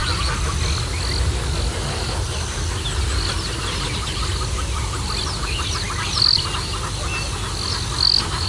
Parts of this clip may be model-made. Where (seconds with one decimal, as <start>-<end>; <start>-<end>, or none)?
none